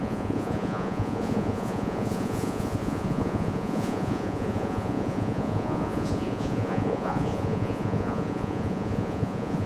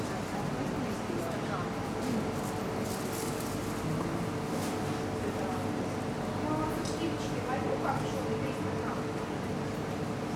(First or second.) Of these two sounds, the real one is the second